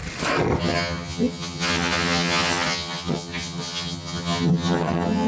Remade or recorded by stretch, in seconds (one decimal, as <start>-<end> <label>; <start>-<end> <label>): 0.0-0.6 recorded; 0.6-5.3 remade